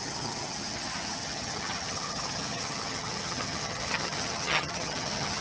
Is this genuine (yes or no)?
no